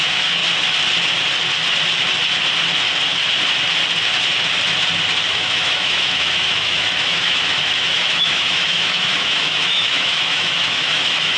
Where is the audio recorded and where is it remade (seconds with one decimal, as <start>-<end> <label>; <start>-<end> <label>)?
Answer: 0.0-0.4 remade; 0.4-5.3 recorded; 5.3-11.4 remade